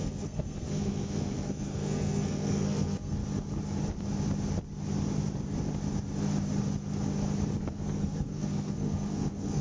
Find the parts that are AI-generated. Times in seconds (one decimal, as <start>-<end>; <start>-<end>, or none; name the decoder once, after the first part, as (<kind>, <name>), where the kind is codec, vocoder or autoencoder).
0.0-3.2 (codec, SNAC); 7.6-9.6